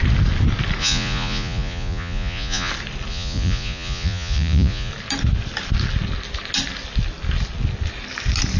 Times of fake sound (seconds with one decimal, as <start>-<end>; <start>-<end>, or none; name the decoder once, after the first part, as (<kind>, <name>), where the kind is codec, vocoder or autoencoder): 0.8-2.7 (vocoder, Vocos); 3.1-4.9